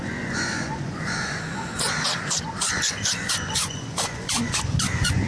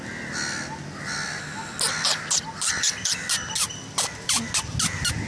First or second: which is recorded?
second